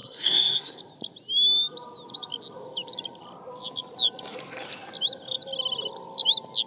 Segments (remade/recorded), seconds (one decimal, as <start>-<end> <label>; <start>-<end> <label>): 0.0-0.8 remade; 0.8-6.7 recorded